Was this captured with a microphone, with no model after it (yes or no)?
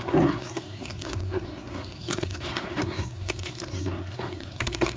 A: no